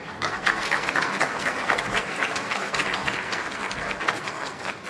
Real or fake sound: fake